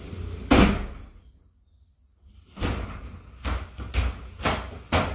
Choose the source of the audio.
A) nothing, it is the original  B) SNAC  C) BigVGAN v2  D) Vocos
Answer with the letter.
A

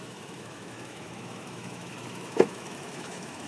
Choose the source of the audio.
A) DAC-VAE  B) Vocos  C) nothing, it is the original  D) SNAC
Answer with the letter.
A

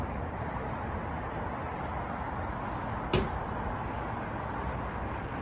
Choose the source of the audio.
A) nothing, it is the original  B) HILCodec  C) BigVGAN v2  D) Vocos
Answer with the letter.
A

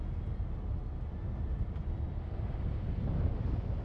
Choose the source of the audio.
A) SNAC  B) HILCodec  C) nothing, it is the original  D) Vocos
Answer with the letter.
C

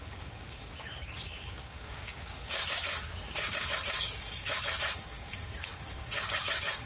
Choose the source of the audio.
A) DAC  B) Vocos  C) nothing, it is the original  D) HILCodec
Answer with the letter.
A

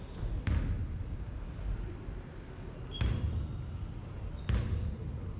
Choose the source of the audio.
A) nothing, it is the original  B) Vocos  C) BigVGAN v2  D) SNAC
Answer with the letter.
A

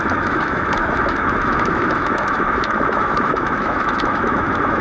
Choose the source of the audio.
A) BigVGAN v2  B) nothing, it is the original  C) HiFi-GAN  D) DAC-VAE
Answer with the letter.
D